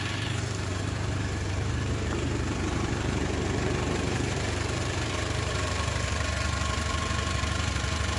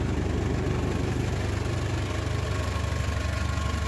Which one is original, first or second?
second